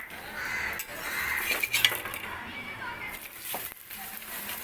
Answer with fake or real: real